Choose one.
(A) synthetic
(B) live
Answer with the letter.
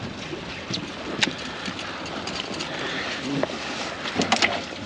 B